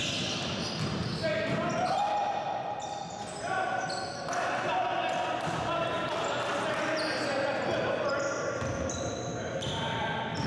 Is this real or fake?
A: real